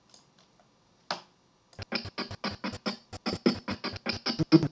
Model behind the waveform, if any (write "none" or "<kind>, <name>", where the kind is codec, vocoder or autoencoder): none